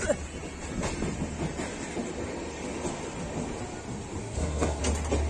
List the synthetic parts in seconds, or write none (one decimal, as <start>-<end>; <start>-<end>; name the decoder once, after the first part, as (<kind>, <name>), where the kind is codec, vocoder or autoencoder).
4.2-4.8 (codec, SNAC)